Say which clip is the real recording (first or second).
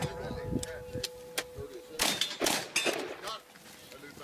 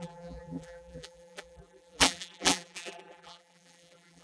first